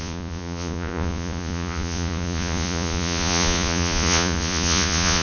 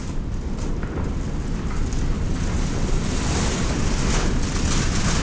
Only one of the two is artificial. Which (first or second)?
first